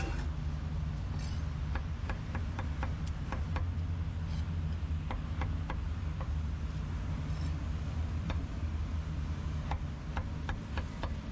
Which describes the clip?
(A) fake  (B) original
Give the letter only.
B